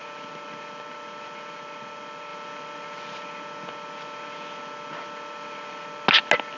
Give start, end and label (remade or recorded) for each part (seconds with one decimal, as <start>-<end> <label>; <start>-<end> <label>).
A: 0.0-6.6 recorded

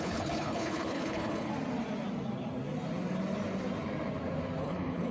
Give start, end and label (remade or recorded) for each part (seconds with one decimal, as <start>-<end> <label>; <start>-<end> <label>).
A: 0.0-1.5 remade; 1.5-4.6 recorded; 4.6-5.1 remade

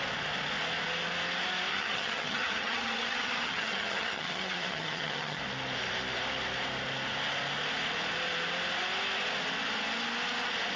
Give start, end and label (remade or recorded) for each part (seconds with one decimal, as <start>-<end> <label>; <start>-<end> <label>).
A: 0.0-1.7 recorded; 1.7-5.4 remade; 5.4-10.8 recorded

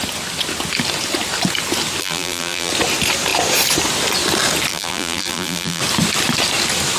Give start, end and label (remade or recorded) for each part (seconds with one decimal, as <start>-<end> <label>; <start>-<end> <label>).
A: 0.0-2.0 recorded; 2.0-2.7 remade; 2.7-4.7 recorded; 4.7-5.8 remade; 5.8-7.0 recorded

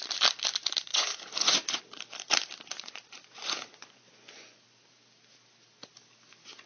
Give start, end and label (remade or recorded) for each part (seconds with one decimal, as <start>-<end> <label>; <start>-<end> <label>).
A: 0.0-0.9 recorded; 0.9-1.8 remade; 1.8-2.7 recorded; 2.7-4.6 remade; 4.6-6.7 recorded

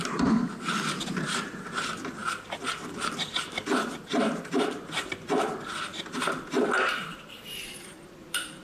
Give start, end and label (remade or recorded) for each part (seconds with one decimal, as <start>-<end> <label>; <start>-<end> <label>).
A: 0.0-2.2 remade; 2.2-2.7 recorded; 2.7-5.9 remade; 5.9-6.4 recorded; 6.4-8.6 remade

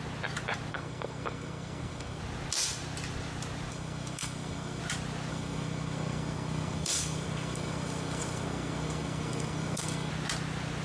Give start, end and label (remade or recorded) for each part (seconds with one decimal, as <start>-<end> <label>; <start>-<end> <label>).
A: 0.0-0.7 recorded; 0.7-2.2 remade; 2.2-3.7 recorded; 3.7-4.8 remade; 4.8-5.3 recorded; 5.3-10.1 remade; 10.1-10.8 recorded

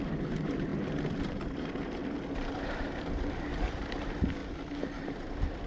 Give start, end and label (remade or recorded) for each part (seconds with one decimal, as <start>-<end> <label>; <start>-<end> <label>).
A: 0.0-0.7 remade; 0.7-1.2 recorded; 1.2-2.0 remade; 2.0-2.6 recorded; 2.6-4.4 remade; 4.4-5.0 recorded; 5.0-5.7 remade